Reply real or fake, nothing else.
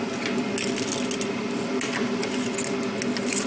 real